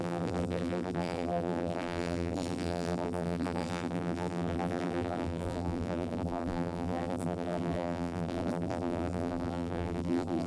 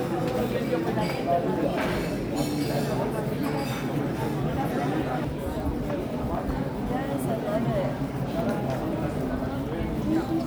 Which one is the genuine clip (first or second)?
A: second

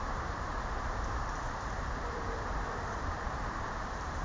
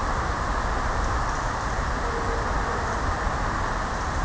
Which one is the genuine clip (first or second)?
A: second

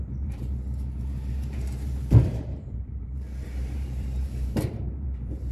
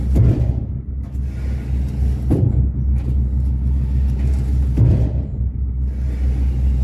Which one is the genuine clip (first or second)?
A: second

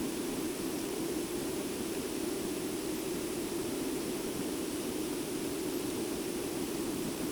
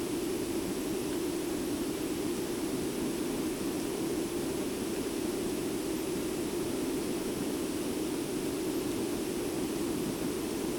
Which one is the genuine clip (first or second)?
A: second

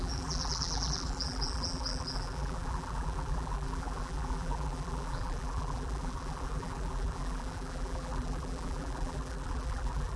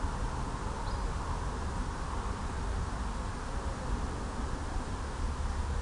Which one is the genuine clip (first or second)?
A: second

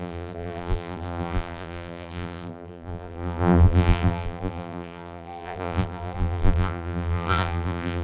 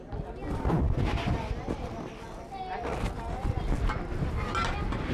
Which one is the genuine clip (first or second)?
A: second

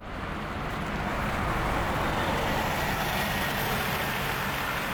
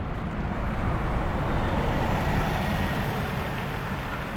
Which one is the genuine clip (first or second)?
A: first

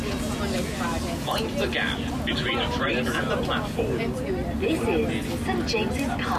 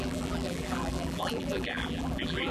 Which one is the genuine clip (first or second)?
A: first